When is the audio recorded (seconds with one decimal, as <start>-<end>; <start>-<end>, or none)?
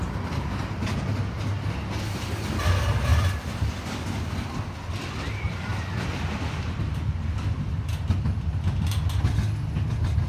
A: 0.0-10.3